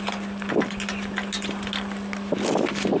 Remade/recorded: recorded